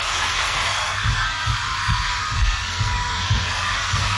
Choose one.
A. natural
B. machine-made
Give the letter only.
B